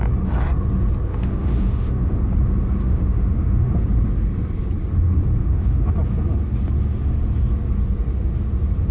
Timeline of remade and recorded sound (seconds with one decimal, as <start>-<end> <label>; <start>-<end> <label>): 0.0-1.1 recorded; 1.1-2.2 remade; 2.2-2.8 recorded; 2.8-3.7 remade; 3.7-5.4 recorded; 5.4-5.9 remade; 5.9-8.9 recorded